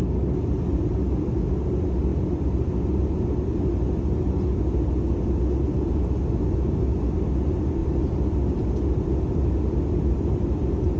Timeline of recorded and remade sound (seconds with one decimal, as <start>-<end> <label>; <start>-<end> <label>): 0.0-7.8 recorded; 7.8-11.0 remade